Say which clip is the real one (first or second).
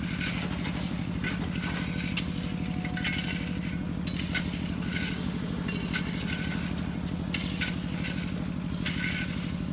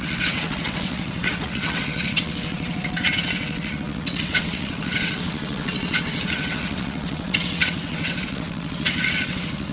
first